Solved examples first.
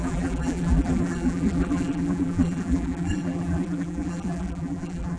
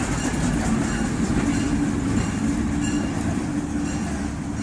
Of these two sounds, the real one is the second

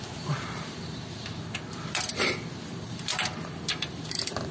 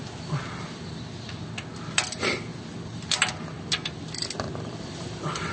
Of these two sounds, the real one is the second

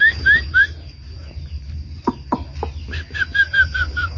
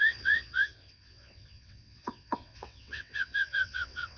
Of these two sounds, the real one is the first